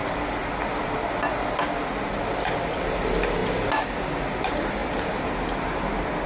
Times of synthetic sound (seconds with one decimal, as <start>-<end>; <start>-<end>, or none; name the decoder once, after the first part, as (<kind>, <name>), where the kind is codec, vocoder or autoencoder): none